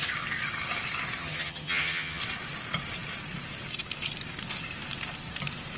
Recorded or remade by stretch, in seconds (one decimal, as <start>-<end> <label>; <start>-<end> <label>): 0.0-1.2 recorded; 1.2-2.2 remade; 2.2-5.8 recorded